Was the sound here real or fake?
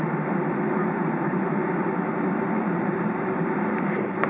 fake